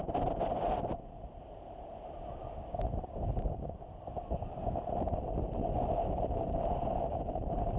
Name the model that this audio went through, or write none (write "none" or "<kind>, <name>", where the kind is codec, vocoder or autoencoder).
vocoder, BigVGAN v2